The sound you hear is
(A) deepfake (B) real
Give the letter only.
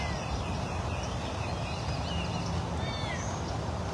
B